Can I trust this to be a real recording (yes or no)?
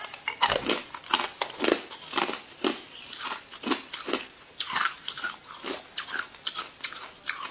yes